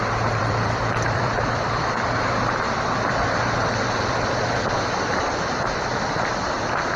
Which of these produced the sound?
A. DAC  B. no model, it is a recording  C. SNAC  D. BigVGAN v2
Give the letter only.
D